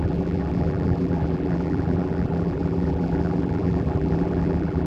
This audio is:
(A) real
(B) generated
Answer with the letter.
B